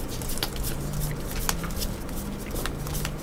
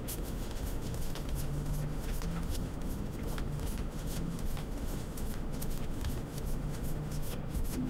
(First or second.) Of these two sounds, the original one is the first